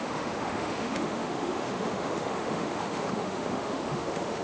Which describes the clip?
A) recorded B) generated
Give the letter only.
B